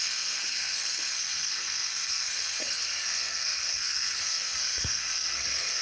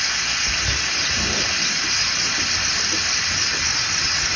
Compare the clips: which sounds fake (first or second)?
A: first